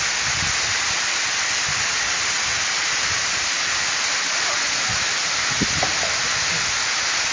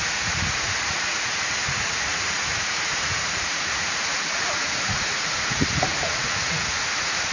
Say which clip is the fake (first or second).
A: second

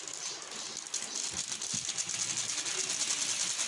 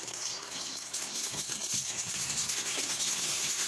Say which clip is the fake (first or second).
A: second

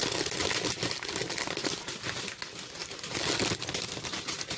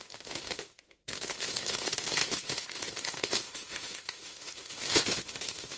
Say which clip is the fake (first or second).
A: second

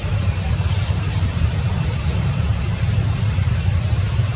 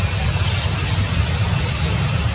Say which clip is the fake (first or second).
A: first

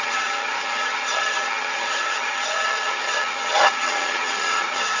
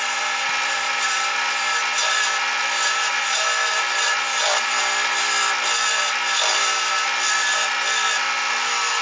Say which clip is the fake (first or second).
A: first